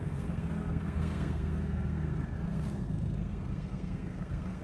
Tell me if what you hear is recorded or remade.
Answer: remade